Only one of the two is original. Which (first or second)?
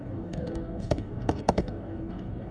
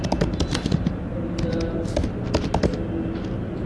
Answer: second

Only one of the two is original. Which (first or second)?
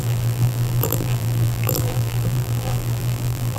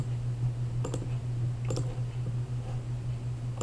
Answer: second